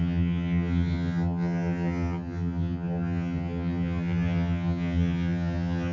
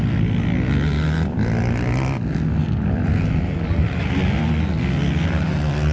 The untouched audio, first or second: second